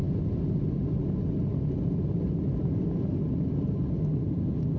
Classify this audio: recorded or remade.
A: recorded